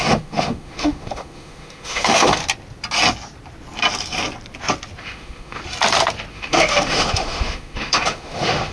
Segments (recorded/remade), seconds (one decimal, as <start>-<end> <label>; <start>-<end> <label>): 0.0-2.4 remade; 2.4-5.0 recorded; 5.0-5.6 remade; 5.6-6.3 recorded; 6.3-8.7 remade